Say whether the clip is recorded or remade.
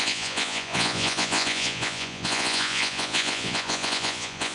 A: remade